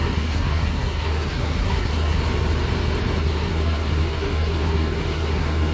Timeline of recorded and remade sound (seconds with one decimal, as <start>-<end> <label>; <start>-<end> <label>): 0.0-2.2 remade; 2.2-3.2 recorded; 3.2-5.7 remade